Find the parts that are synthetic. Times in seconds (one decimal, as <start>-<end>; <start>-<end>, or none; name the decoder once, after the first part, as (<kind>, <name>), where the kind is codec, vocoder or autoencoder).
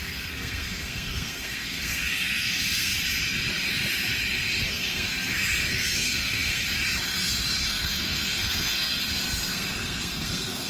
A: 0.0-2.9 (codec, SNAC); 4.7-6.6; 7.7-10.7